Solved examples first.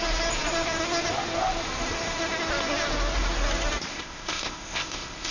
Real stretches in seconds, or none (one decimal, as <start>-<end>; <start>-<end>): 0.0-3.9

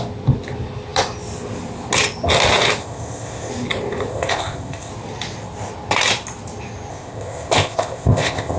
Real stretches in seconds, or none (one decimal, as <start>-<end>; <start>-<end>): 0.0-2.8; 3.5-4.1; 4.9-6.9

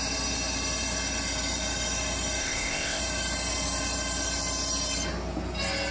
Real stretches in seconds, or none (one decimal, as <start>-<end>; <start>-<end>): 0.0-2.4; 3.0-5.9

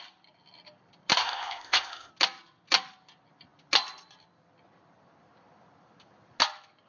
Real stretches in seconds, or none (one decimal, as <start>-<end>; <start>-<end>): 0.0-1.2; 2.1-6.9